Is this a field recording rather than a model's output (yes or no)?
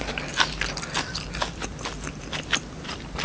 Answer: yes